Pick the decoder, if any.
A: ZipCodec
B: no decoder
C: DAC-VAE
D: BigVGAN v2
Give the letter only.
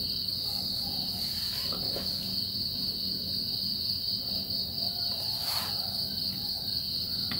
B